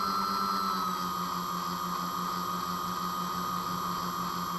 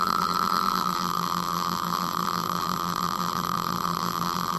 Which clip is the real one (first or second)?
first